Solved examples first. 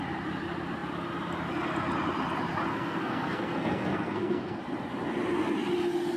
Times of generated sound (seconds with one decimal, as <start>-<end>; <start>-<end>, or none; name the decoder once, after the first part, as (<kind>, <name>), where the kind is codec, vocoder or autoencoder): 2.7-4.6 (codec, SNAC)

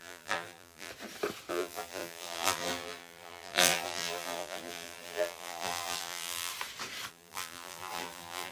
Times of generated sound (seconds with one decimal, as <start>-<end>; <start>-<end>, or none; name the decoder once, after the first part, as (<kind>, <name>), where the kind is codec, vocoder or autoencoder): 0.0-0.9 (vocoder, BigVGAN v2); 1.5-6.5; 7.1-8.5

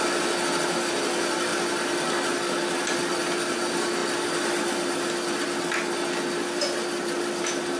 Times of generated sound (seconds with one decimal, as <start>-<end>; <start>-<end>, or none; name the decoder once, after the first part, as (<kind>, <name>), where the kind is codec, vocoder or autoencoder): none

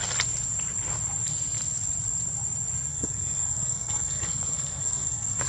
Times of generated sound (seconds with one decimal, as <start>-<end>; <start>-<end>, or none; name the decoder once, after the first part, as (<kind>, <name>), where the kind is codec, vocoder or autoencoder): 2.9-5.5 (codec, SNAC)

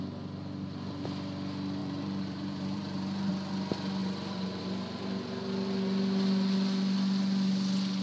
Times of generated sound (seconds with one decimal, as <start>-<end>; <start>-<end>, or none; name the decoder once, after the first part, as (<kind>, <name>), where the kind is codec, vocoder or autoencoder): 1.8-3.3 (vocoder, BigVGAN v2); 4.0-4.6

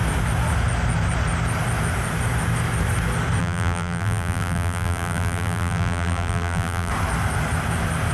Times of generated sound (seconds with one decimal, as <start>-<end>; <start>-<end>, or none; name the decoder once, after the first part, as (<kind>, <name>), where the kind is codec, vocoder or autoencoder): 3.4-6.9 (vocoder, BigVGAN v2)